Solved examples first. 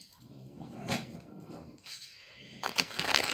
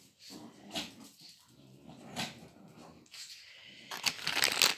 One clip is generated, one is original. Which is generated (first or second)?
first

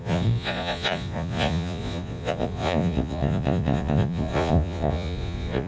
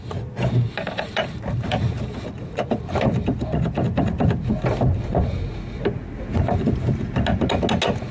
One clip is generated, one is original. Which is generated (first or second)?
first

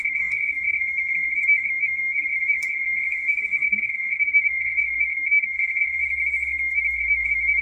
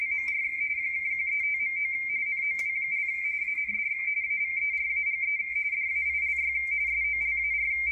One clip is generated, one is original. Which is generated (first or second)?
first